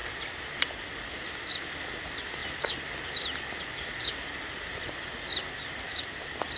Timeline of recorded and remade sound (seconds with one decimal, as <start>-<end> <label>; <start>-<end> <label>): 0.0-6.6 recorded